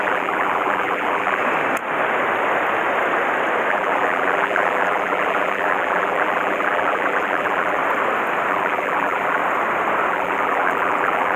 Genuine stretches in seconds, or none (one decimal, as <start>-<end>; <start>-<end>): 1.4-3.7; 7.8-8.5; 9.4-10.1